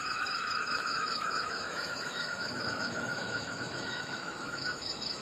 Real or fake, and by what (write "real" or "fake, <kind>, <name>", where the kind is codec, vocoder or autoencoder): fake, autoencoder, DAC-VAE